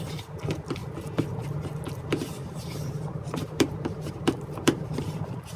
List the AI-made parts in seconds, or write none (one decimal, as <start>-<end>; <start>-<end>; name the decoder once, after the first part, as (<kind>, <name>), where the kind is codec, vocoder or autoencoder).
2.4-5.0 (vocoder, BigVGAN v2)